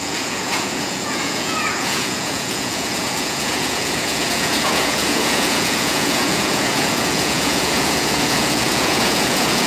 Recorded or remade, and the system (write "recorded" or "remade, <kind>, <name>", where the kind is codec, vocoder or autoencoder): remade, vocoder, Vocos